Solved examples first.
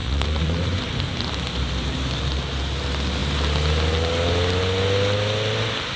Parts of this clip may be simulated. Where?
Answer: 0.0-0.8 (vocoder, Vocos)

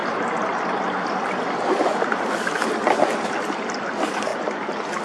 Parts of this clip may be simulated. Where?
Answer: 2.3-4.3 (vocoder, BigVGAN v2)

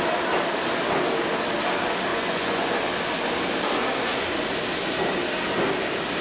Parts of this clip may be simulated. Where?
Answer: 2.1-2.7 (vocoder, Vocos)

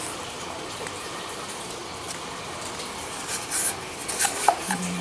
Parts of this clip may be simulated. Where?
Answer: 0.0-1.8 (vocoder, BigVGAN v2)

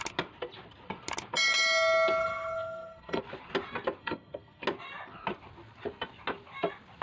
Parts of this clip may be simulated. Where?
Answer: 2.2-3.2 (codec, SNAC); 4.0-4.6

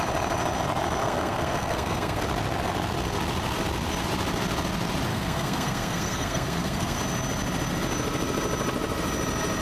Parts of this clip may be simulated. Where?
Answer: 1.0-2.2 (codec, SNAC); 5.1-7.0

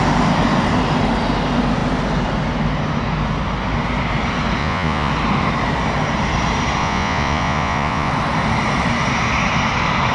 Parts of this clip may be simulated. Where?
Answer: 4.6-5.1 (vocoder, Vocos); 6.8-8.1